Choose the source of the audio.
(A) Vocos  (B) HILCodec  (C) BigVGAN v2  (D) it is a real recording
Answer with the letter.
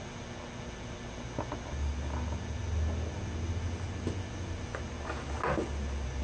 D